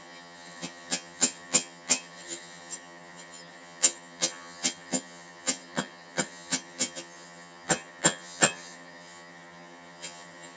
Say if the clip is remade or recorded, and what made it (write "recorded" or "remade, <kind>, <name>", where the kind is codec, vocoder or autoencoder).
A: remade, vocoder, HiFi-GAN